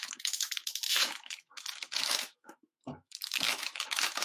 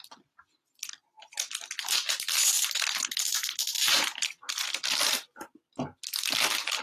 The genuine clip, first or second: second